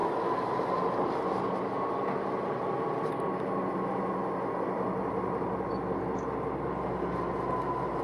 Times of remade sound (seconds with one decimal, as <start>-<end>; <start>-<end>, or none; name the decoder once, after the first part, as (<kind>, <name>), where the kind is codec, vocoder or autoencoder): none